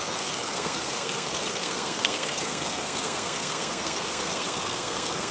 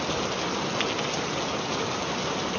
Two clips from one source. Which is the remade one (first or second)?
first